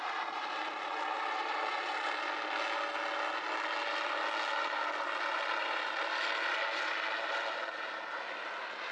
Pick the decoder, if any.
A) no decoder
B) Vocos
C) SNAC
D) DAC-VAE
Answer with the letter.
A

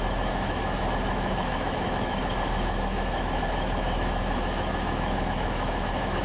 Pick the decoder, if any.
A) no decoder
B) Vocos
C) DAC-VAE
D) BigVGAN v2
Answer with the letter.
C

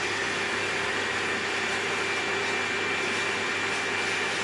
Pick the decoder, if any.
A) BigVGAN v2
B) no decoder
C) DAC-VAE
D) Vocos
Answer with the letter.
B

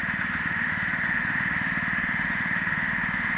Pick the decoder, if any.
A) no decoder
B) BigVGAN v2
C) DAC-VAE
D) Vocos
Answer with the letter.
C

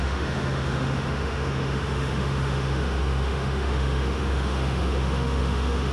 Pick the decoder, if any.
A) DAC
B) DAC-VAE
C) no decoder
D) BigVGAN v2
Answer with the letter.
B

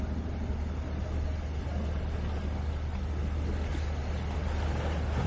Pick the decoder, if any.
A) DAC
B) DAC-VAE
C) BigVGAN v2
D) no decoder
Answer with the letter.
D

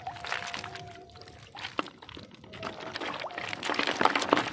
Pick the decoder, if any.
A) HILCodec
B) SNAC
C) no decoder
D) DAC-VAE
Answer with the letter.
C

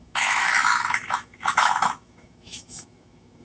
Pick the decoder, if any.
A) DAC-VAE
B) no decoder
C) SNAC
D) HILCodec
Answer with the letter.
A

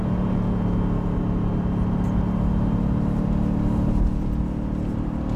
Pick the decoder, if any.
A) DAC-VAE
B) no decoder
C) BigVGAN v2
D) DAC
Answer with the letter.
B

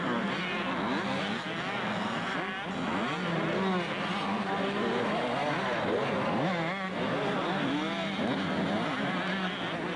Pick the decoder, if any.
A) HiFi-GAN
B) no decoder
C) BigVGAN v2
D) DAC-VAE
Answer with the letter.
B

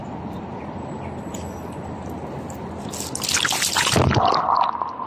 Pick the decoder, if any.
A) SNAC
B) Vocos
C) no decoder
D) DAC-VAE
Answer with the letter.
C